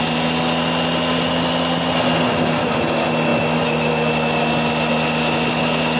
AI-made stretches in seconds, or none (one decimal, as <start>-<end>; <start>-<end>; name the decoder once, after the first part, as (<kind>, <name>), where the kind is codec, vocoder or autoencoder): none

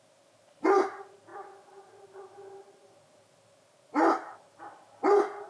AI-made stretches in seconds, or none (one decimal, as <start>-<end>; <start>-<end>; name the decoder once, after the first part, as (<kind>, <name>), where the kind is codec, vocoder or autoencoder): none

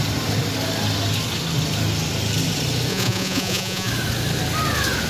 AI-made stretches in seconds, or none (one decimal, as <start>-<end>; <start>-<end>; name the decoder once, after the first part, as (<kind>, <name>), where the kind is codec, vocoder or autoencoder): 2.9-3.9 (vocoder, Vocos)